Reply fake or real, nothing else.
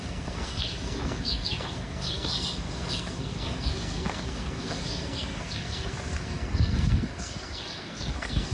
fake